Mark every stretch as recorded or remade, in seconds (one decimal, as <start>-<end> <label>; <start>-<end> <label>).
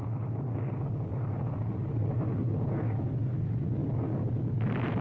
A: 0.0-5.0 recorded